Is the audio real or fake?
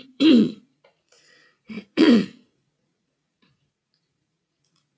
fake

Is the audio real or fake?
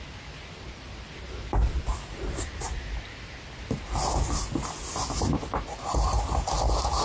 real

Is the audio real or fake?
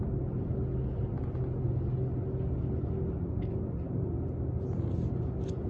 real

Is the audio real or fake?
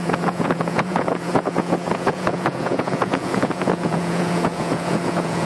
fake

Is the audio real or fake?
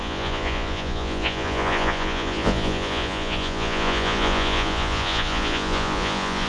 fake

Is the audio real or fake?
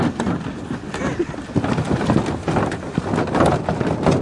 real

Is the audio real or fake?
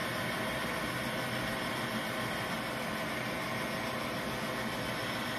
real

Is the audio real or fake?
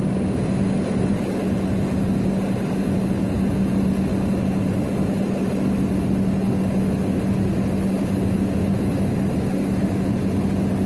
real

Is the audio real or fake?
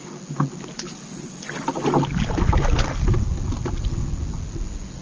real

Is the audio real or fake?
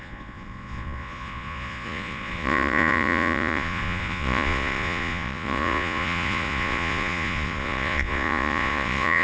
fake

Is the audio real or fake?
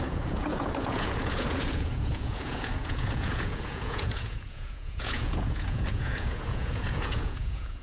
fake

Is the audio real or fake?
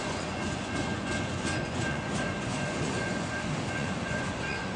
fake